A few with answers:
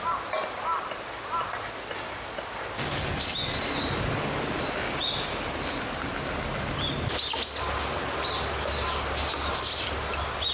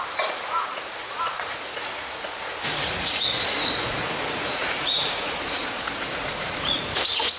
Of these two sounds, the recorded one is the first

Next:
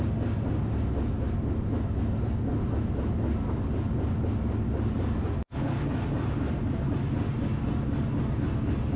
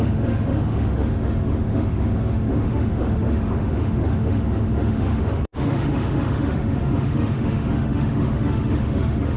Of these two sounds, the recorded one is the first